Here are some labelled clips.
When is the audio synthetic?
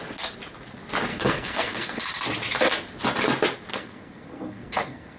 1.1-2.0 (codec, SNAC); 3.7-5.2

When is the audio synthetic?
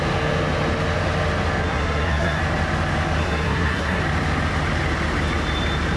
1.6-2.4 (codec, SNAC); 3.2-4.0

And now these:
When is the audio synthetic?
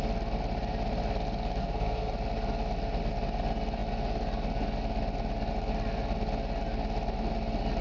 1.6-2.1 (codec, SNAC)